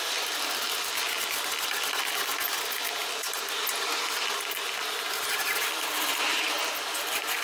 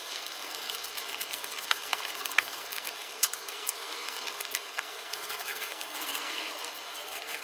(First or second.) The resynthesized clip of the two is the second